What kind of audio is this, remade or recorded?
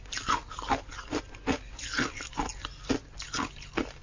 recorded